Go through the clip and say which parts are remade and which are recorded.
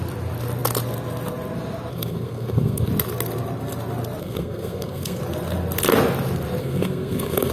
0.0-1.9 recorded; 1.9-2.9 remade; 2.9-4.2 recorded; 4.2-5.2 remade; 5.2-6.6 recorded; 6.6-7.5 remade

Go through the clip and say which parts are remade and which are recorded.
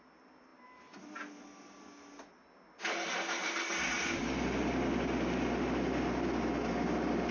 0.0-7.3 recorded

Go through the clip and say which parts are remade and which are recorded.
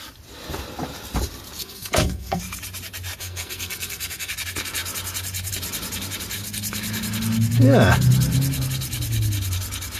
0.0-1.6 recorded; 1.6-2.4 remade; 2.4-3.2 recorded; 3.2-4.3 remade; 4.3-10.0 recorded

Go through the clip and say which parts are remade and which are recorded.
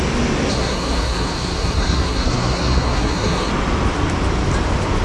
0.0-0.5 recorded; 0.5-3.5 remade; 3.5-5.0 recorded